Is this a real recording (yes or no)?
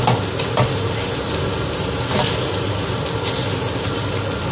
yes